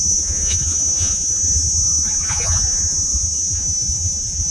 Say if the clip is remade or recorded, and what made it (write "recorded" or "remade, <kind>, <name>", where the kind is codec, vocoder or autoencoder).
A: remade, vocoder, Vocos